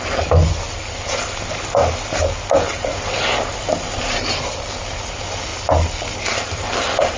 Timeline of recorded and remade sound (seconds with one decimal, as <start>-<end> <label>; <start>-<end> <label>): 0.0-7.2 recorded